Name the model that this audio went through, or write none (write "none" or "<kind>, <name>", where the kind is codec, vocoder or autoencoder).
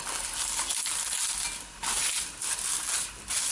none